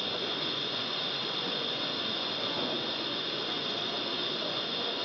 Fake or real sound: fake